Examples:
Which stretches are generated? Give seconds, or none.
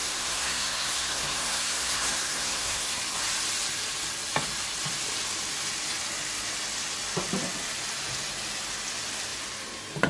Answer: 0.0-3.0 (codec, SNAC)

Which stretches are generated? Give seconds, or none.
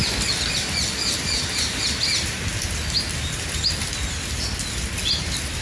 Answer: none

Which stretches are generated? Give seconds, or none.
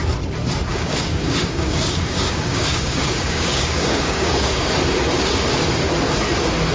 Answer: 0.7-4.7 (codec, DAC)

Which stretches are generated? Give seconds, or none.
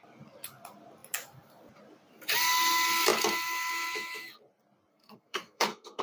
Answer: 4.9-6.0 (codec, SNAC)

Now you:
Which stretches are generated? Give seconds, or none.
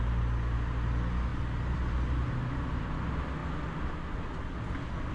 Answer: none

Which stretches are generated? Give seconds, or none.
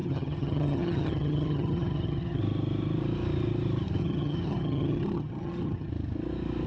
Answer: 0.0-2.4 (vocoder, HiFi-GAN); 4.0-5.9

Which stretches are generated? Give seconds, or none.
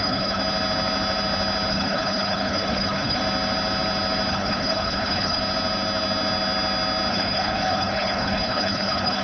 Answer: 0.0-0.4 (codec, HILCodec); 1.7-3.2; 4.3-5.4; 7.1-9.2